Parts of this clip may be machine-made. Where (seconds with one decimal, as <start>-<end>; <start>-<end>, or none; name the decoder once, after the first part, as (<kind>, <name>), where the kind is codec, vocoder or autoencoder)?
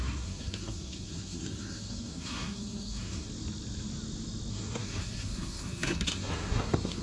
0.0-3.3 (codec, SNAC); 4.5-7.0